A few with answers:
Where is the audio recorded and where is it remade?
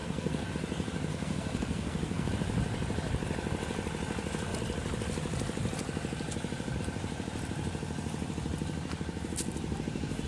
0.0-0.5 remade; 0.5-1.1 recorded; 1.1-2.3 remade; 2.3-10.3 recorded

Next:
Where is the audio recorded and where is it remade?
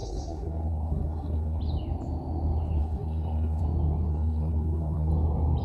0.0-1.6 remade; 1.6-2.8 recorded; 2.8-3.6 remade; 3.6-4.1 recorded; 4.1-5.1 remade; 5.1-5.6 recorded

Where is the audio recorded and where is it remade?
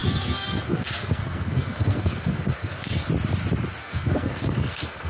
0.0-3.1 remade; 3.1-3.8 recorded; 3.8-5.1 remade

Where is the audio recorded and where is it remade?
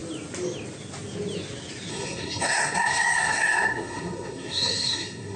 0.0-1.9 recorded; 1.9-5.4 remade